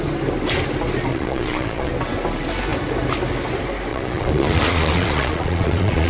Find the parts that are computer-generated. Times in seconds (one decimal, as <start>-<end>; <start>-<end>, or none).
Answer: 1.1-1.9; 3.9-6.1